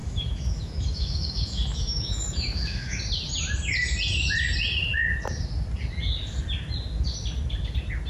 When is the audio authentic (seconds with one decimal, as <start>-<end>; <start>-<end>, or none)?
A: 3.0-8.1